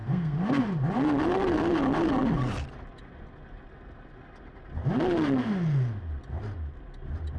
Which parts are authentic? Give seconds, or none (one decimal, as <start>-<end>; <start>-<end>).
0.6-7.4